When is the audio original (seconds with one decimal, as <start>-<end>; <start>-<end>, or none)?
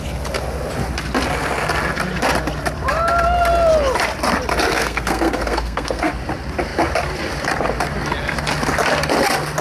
0.0-4.7; 6.1-9.6